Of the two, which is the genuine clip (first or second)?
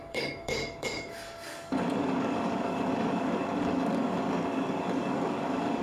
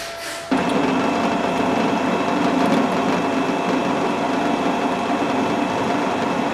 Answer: second